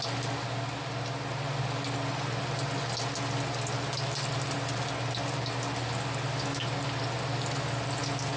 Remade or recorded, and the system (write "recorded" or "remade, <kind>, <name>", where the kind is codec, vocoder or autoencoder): recorded